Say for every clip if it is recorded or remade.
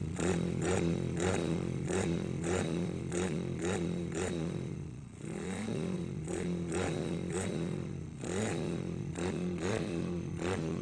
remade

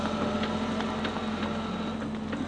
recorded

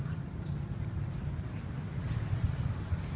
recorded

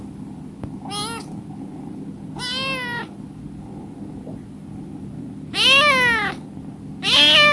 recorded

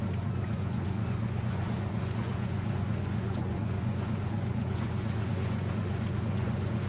remade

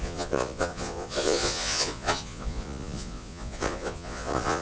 remade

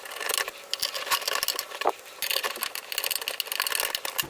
recorded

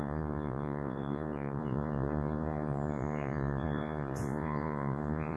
remade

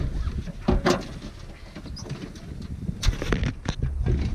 recorded